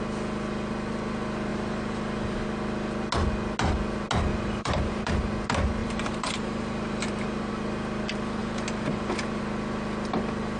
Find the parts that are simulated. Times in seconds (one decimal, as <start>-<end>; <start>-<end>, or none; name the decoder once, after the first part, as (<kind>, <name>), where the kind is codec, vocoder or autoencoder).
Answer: 1.5-2.4 (vocoder, BigVGAN v2); 4.3-5.1; 5.8-7.5; 8.4-9.4